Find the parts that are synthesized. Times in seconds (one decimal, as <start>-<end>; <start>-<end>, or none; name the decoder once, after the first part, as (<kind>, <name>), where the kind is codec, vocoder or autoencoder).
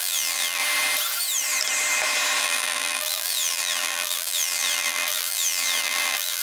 0.0-0.6 (vocoder, BigVGAN v2); 2.4-6.4